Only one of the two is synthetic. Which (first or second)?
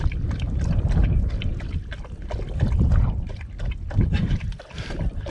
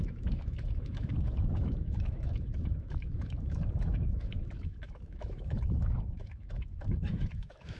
second